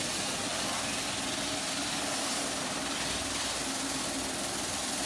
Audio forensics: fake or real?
real